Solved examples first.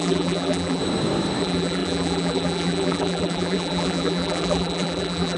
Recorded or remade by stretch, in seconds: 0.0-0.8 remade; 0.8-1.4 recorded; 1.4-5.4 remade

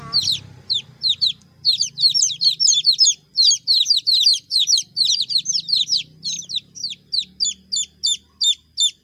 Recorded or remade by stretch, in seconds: 0.0-4.3 recorded; 4.3-5.1 remade; 5.1-9.0 recorded

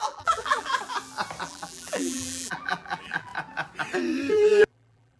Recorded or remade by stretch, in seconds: 0.0-0.7 remade; 0.7-1.4 recorded; 1.4-3.3 remade; 3.3-4.3 recorded; 4.3-5.2 remade